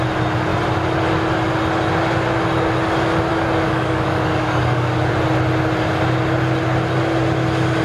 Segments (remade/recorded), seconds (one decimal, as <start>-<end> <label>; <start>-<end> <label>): 0.0-3.3 recorded; 3.3-5.1 remade; 5.1-7.8 recorded

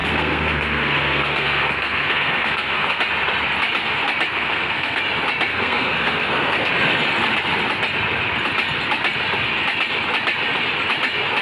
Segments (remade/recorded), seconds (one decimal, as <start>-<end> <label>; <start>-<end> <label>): 0.0-3.0 remade; 3.0-4.3 recorded; 4.3-5.0 remade; 5.0-5.5 recorded; 5.5-6.7 remade; 6.7-11.4 recorded

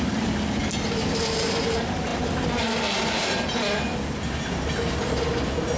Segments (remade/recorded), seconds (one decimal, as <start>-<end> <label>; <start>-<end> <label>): 0.0-5.8 recorded

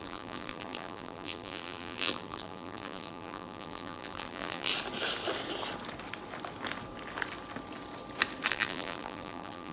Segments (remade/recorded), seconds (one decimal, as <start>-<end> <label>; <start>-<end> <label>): 0.0-4.7 remade; 4.7-8.5 recorded; 8.5-9.7 remade

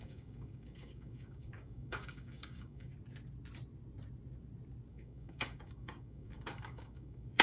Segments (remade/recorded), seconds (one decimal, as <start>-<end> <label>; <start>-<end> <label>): 0.0-2.9 remade; 2.9-4.9 recorded; 4.9-7.4 remade

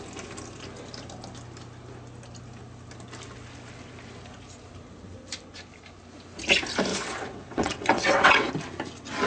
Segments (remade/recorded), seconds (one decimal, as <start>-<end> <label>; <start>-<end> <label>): 0.0-6.9 recorded; 6.9-8.5 remade; 8.5-9.3 recorded

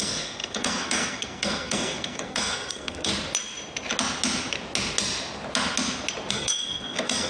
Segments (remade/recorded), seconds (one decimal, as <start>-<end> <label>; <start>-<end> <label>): 0.0-3.1 remade; 3.1-6.3 recorded; 6.3-7.3 remade

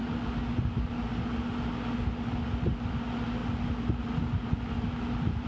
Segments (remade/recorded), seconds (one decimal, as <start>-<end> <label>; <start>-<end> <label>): 0.0-5.5 recorded